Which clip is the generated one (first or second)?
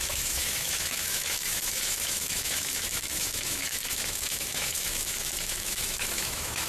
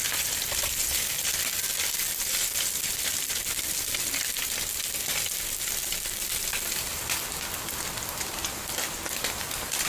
first